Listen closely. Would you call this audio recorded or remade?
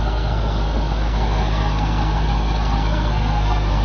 remade